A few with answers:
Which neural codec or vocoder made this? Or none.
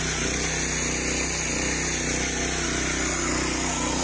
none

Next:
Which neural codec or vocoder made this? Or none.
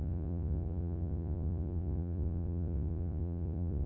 vocoder, Vocos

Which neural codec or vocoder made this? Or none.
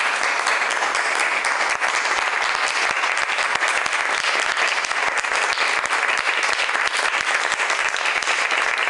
none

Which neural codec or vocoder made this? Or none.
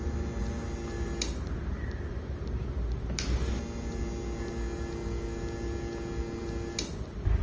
none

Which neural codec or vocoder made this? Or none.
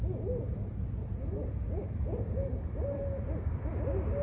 none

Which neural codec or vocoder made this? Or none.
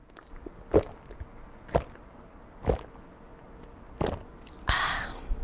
none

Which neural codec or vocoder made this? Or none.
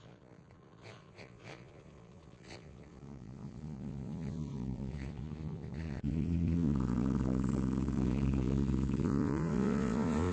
vocoder, Vocos